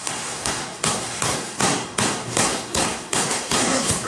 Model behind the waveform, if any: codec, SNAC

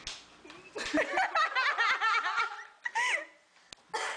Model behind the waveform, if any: none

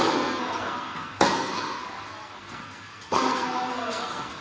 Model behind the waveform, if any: codec, SNAC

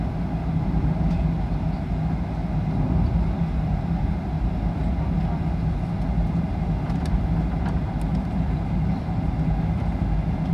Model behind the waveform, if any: none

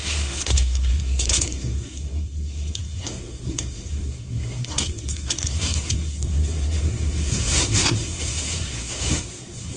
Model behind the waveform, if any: codec, SNAC